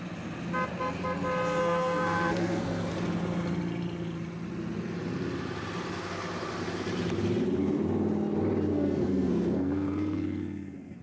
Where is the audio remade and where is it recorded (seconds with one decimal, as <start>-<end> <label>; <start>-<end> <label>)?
0.0-1.6 recorded; 1.6-2.9 remade; 2.9-8.7 recorded; 8.7-11.0 remade